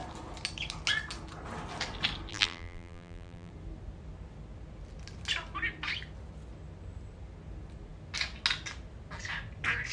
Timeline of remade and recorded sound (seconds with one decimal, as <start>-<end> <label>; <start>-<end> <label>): 0.0-2.3 recorded; 2.3-3.5 remade; 3.5-9.9 recorded